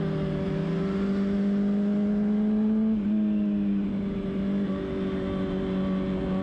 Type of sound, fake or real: real